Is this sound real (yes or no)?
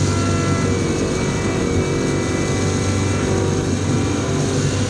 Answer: yes